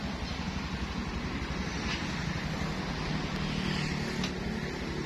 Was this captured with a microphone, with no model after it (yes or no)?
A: yes